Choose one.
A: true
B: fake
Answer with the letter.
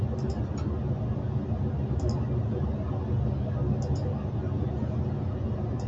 A